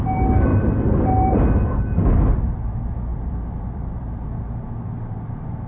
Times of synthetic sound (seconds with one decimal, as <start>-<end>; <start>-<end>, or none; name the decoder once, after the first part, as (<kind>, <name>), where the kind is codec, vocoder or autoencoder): 0.5-1.3 (vocoder, BigVGAN v2); 3.1-4.2